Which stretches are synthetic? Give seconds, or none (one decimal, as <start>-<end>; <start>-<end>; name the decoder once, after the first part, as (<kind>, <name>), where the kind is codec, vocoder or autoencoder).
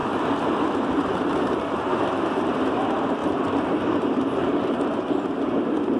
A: 1.9-2.8 (vocoder, BigVGAN v2); 3.2-4.9